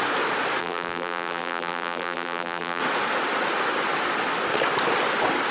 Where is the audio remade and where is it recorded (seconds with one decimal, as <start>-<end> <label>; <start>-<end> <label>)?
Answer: 0.0-0.6 recorded; 0.6-2.8 remade; 2.8-5.5 recorded